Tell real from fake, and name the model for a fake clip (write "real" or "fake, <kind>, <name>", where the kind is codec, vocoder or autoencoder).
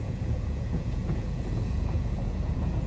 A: fake, vocoder, Vocos